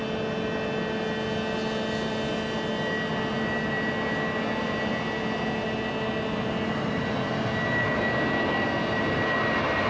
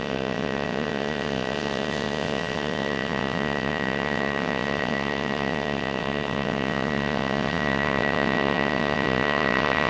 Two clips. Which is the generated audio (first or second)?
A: second